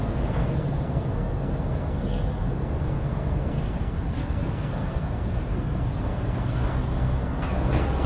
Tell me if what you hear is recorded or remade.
remade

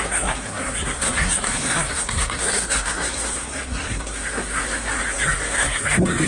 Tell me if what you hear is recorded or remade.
remade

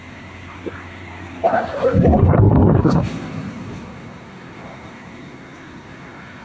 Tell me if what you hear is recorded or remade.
remade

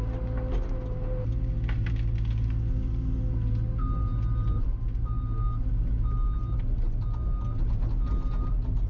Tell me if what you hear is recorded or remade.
recorded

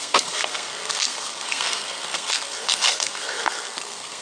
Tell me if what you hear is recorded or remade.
remade